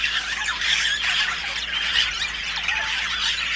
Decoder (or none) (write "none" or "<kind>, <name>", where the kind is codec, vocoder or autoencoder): vocoder, BigVGAN v2